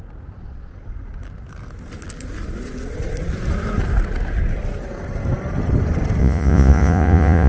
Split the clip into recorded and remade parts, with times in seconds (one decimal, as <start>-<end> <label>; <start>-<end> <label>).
0.0-6.2 recorded; 6.2-7.5 remade